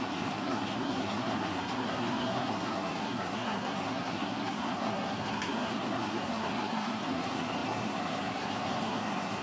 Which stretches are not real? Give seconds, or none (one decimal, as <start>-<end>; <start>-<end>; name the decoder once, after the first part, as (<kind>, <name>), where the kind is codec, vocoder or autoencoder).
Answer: 0.0-9.4 (codec, SNAC)